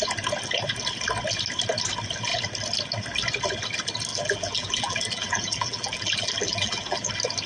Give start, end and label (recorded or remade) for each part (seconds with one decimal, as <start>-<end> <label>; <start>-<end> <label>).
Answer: 0.0-4.1 recorded; 4.1-7.1 remade; 7.1-7.5 recorded